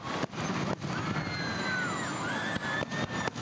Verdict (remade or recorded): recorded